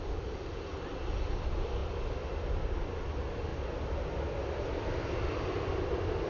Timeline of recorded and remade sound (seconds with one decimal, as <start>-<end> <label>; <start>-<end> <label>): 0.0-6.3 recorded